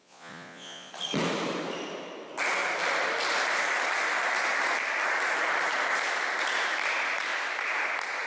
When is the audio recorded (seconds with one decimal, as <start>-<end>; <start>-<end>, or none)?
0.9-8.3